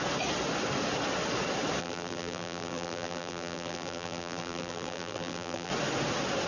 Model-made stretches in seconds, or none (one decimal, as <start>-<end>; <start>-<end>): 1.8-5.7